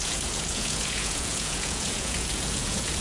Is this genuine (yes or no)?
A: no